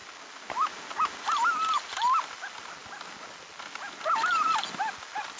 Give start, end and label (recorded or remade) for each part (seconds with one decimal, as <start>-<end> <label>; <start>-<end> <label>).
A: 0.0-5.4 recorded